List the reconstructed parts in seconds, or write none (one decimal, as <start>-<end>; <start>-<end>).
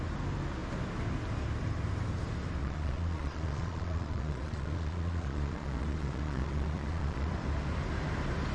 2.6-7.3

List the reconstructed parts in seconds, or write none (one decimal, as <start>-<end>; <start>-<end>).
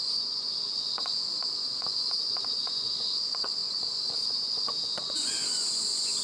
0.0-6.2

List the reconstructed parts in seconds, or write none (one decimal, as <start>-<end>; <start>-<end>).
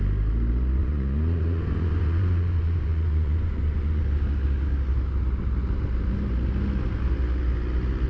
0.8-4.0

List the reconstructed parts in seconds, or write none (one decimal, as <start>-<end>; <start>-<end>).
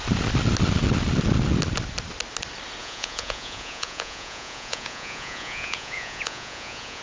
2.8-7.0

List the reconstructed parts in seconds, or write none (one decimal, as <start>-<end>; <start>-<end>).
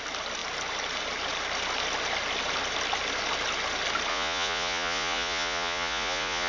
4.1-6.5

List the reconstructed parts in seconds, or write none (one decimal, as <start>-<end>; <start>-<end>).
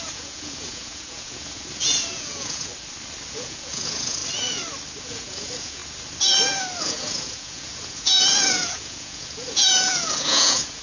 0.0-2.7; 3.3-4.2; 5.0-5.8; 6.8-10.8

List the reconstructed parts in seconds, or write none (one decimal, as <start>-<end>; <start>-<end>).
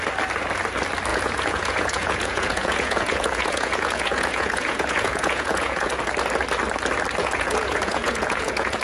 1.1-5.9; 7.2-8.8